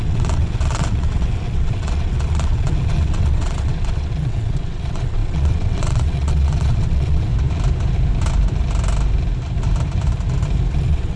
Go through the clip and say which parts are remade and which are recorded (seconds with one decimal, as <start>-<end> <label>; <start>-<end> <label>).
0.0-7.3 remade; 7.3-10.7 recorded; 10.7-11.2 remade